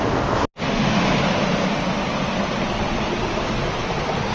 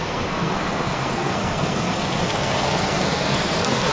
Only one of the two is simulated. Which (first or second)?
second